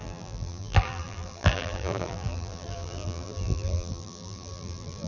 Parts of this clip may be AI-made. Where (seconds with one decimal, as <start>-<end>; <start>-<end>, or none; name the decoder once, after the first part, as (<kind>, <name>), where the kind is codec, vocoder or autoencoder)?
0.0-5.1 (vocoder, BigVGAN v2)